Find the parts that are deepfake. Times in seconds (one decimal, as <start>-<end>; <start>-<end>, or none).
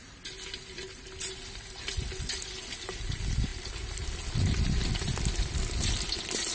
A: none